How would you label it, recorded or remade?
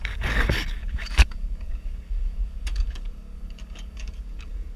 remade